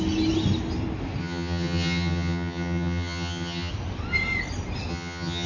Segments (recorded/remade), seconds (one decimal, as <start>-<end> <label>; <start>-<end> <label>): 0.0-1.2 recorded; 1.2-3.7 remade; 3.7-4.9 recorded; 4.9-5.5 remade